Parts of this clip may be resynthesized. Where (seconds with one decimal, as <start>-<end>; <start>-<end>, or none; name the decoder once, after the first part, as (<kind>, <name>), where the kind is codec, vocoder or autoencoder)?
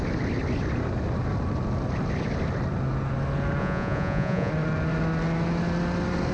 3.6-4.5 (vocoder, Vocos)